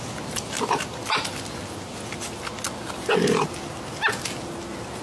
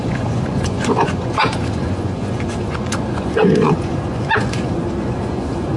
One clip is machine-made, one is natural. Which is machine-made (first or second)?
second